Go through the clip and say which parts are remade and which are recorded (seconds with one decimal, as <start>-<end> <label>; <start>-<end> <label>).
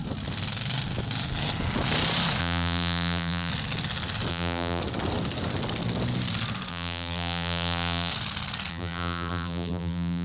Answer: 0.0-2.4 recorded; 2.4-3.5 remade; 3.5-4.3 recorded; 4.3-4.8 remade; 4.8-6.7 recorded; 6.7-8.1 remade; 8.1-8.7 recorded; 8.7-10.2 remade